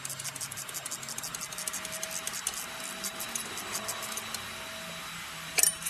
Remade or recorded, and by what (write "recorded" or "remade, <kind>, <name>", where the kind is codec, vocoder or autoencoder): recorded